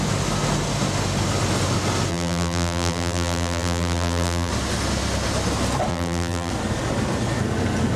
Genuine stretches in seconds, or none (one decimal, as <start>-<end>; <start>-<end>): 0.0-2.1; 4.5-5.9; 6.5-8.0